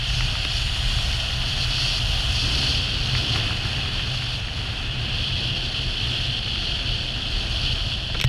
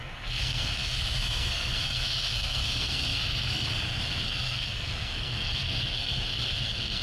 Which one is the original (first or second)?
first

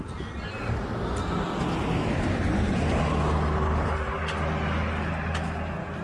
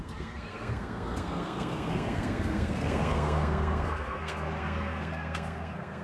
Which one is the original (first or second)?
first